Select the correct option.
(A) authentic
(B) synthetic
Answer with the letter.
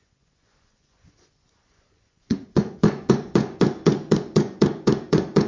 B